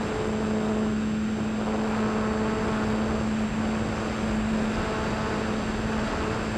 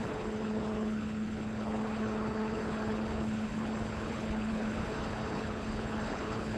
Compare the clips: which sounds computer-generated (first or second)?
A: second